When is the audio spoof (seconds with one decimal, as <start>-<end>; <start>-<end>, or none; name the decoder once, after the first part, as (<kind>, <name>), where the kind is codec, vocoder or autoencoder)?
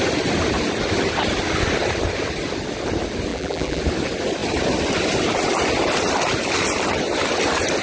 3.3-3.8 (vocoder, BigVGAN v2)